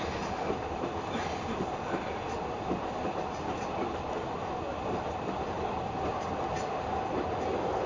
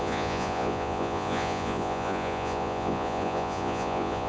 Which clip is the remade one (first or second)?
second